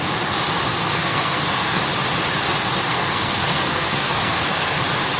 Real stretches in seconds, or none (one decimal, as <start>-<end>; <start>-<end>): 0.0-0.7; 1.8-2.9; 4.8-5.2